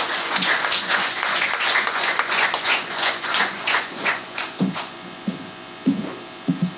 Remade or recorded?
remade